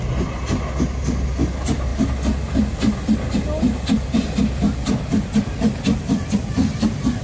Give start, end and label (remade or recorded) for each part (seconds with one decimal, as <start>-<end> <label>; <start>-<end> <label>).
0.0-7.2 recorded